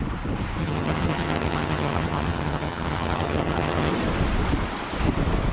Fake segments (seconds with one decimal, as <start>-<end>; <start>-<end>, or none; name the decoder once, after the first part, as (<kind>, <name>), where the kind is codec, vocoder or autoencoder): 0.6-3.9 (vocoder, HiFi-GAN)